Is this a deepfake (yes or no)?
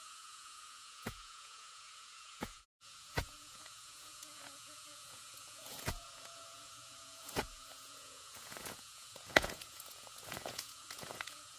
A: yes